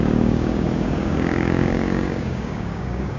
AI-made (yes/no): yes